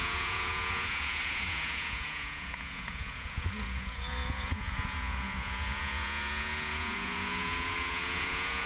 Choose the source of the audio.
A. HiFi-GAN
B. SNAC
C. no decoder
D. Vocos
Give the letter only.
D